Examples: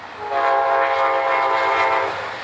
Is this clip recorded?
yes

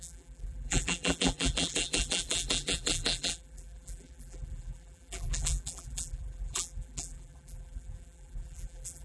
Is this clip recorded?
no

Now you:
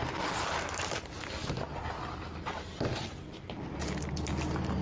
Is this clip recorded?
yes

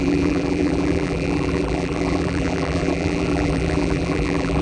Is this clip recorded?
no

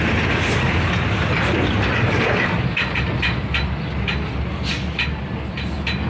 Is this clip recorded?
yes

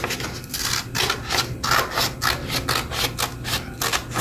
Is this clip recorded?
yes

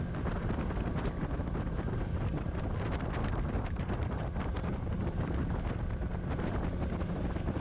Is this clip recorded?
no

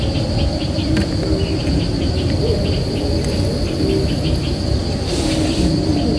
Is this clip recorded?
yes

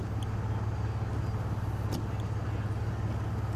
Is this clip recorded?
yes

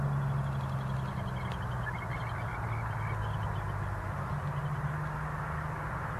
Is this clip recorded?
yes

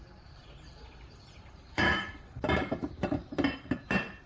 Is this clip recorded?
no